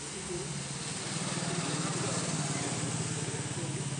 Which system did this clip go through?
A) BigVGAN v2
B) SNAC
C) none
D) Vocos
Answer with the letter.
C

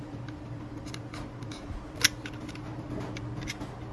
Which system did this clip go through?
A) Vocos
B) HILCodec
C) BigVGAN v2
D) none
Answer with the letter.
D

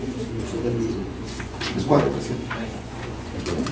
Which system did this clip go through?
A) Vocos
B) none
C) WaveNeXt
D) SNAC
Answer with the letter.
A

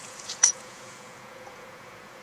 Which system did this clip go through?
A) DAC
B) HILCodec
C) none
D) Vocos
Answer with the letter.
D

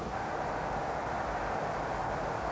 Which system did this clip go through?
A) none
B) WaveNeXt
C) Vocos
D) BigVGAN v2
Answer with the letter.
A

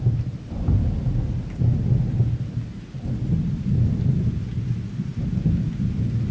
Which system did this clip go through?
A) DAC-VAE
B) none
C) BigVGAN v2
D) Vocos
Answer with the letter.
B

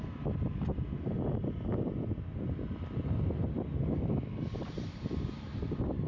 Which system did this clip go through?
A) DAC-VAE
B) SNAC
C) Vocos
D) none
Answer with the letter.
D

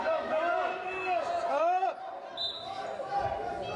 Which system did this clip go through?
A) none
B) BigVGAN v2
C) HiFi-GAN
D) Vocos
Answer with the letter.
A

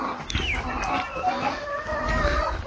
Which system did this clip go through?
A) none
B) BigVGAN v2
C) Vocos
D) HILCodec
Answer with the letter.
A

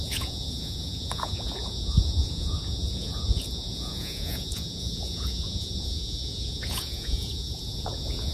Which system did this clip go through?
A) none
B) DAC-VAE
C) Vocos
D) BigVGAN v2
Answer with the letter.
C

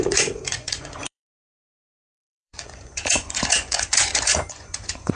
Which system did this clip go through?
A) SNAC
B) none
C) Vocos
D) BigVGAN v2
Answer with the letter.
C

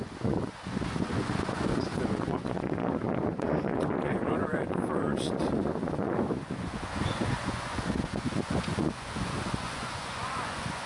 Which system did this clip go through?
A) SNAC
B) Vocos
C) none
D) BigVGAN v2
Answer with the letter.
B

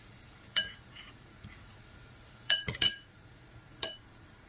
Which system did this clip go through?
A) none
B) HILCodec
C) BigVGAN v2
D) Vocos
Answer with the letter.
D